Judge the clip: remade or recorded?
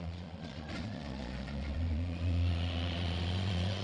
remade